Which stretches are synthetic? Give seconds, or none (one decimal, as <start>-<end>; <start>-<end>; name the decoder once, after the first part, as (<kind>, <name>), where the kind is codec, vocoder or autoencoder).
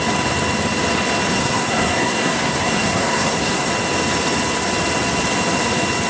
1.3-3.7 (codec, SNAC)